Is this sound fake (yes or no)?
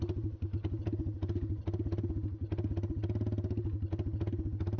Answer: no